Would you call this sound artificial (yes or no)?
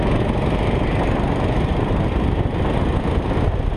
no